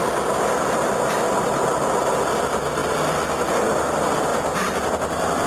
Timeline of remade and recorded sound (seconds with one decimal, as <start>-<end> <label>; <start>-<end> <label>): 0.0-5.5 recorded